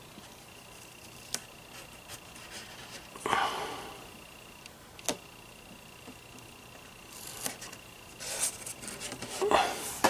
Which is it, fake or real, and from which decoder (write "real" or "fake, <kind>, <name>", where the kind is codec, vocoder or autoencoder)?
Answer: real